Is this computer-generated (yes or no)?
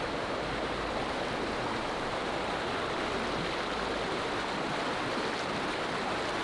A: no